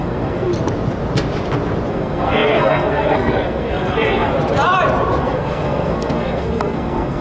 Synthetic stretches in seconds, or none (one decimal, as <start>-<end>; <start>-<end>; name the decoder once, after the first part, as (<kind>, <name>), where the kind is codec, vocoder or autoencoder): 0.0-0.5 (codec, SNAC); 1.9-4.3; 5.2-7.2